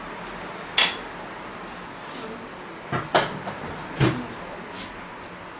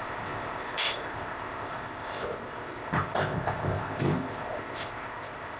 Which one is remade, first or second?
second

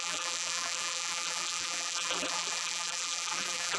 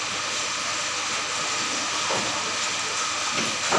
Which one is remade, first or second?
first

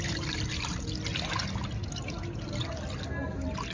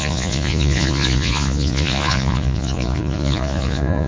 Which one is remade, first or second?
second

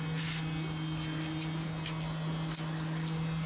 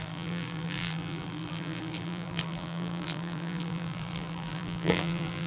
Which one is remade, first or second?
second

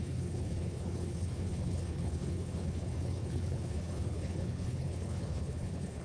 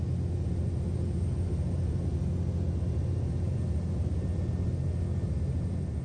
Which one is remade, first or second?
first